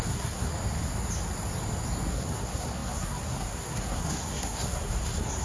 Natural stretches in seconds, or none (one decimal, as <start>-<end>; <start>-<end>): 0.5-2.1